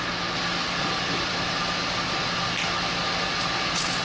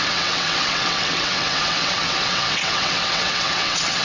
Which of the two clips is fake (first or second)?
second